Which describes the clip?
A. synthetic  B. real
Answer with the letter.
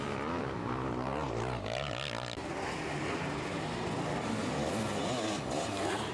B